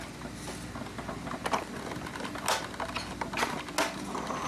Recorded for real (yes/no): yes